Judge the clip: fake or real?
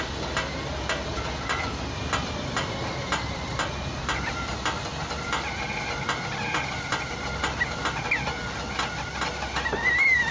real